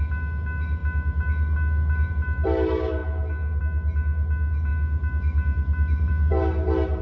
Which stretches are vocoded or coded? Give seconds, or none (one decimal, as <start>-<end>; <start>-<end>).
none